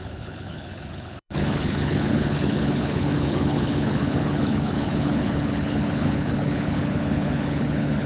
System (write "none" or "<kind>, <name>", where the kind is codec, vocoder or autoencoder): codec, HILCodec